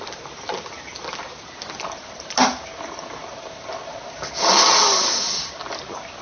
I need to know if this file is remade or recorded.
recorded